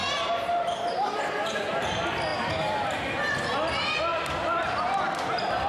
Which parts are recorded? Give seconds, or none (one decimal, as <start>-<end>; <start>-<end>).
0.0-1.1